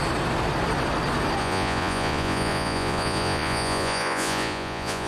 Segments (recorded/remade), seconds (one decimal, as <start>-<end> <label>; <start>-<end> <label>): 0.0-1.4 recorded; 1.4-5.1 remade